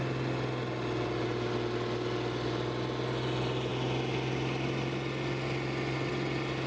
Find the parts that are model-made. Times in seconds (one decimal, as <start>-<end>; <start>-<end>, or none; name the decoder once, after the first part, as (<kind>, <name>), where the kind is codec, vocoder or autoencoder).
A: none